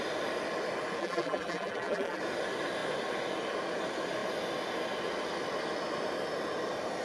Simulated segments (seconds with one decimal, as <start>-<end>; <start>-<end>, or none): 1.0-2.2